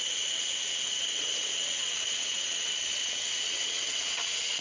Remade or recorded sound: remade